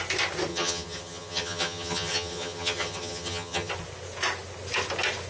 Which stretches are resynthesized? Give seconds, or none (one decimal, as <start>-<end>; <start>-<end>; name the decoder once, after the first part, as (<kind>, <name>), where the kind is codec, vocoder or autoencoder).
0.5-3.7 (vocoder, HiFi-GAN)

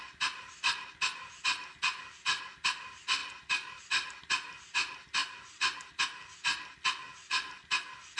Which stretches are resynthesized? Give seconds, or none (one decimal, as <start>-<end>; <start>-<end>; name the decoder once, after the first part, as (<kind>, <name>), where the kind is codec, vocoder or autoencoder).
3.2-3.8 (vocoder, BigVGAN v2)

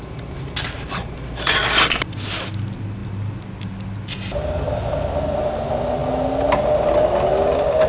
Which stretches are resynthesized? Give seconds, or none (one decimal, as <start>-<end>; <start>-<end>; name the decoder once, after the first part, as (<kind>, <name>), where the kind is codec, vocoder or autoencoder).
none